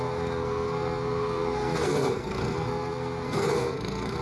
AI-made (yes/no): yes